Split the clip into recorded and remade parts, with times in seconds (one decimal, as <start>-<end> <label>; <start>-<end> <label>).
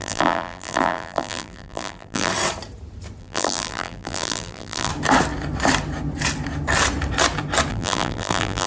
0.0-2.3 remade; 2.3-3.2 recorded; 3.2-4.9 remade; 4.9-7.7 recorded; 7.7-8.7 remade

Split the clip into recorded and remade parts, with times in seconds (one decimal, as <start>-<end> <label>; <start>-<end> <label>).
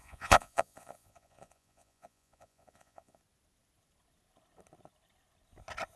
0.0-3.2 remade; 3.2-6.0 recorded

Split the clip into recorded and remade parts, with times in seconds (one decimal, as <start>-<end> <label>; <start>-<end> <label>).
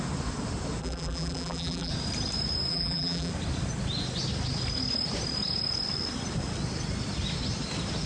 0.0-0.8 recorded; 0.8-1.9 remade; 1.9-2.7 recorded; 2.7-3.3 remade; 3.3-8.1 recorded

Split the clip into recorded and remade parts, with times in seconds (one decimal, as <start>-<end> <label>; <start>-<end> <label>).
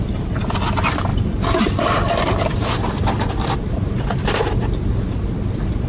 0.0-1.1 recorded; 1.1-4.4 remade; 4.4-5.9 recorded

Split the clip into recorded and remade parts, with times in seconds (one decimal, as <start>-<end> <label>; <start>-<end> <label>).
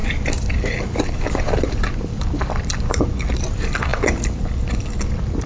0.0-5.5 remade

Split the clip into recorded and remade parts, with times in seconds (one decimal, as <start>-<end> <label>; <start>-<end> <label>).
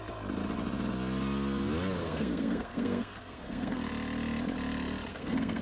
0.0-2.0 recorded; 2.0-3.9 remade; 3.9-5.1 recorded; 5.1-5.6 remade